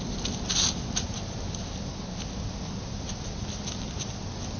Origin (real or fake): real